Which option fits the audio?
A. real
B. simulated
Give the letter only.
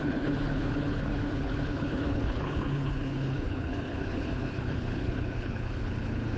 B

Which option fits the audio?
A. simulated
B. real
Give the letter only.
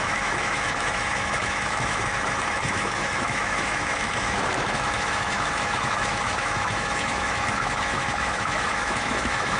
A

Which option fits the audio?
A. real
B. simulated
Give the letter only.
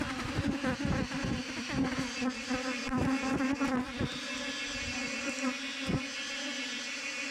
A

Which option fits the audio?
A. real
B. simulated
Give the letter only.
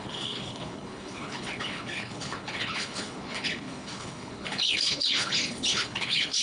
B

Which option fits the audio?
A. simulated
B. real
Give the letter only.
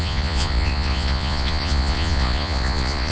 A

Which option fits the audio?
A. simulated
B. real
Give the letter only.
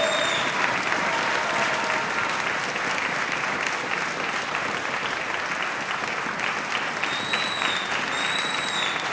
B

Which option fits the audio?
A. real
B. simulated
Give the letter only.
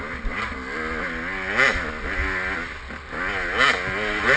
A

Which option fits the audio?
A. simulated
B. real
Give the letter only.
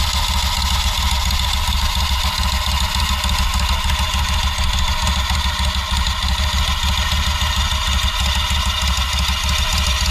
B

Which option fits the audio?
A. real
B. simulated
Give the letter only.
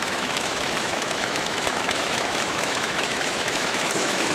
B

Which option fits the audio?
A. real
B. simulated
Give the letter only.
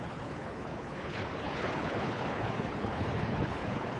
B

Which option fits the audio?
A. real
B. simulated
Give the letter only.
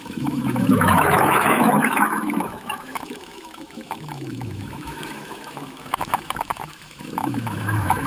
B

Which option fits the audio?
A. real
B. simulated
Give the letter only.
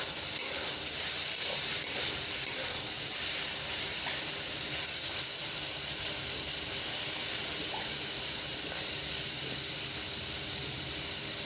B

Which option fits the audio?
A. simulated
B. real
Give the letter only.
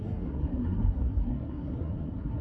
A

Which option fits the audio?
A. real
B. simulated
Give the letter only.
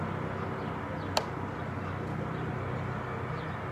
A